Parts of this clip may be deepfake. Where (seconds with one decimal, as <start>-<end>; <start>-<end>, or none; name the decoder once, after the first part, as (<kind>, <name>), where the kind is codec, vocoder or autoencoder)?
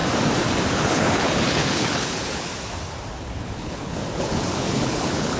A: 0.7-2.5 (codec, HILCodec); 3.4-5.4